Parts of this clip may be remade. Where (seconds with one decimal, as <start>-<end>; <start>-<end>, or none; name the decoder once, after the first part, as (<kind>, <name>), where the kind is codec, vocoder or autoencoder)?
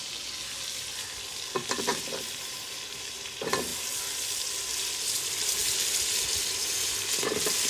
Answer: 1.9-2.6 (vocoder, BigVGAN v2)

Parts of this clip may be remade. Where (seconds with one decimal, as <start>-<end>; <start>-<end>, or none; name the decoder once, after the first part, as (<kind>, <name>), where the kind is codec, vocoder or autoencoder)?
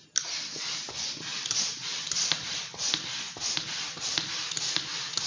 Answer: 1.3-4.5 (vocoder, BigVGAN v2)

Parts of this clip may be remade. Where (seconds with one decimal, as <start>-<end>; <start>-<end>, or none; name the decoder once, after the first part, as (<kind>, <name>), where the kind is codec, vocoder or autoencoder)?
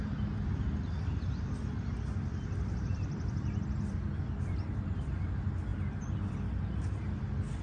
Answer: 2.9-4.1 (vocoder, BigVGAN v2); 5.7-6.3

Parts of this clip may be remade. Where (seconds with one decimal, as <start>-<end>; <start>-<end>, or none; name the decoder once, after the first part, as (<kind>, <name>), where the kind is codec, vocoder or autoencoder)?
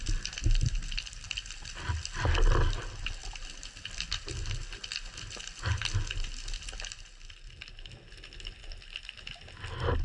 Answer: none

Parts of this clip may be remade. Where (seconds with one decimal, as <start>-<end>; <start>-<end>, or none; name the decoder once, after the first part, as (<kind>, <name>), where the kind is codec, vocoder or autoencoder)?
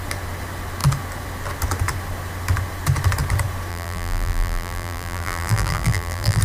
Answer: 3.7-6.4 (vocoder, BigVGAN v2)